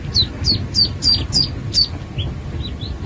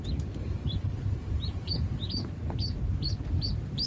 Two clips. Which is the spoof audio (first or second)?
second